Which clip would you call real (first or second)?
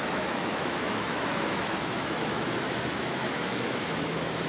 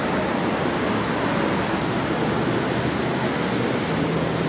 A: second